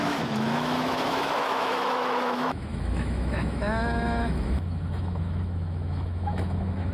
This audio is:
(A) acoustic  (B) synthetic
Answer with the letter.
B